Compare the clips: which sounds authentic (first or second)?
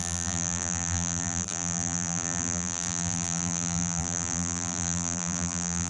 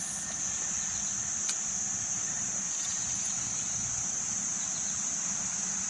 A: second